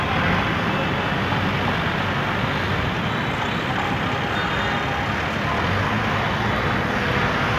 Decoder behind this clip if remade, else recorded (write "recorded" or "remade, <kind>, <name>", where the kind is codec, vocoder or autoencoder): recorded